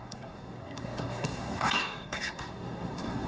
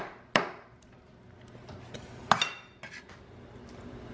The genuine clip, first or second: second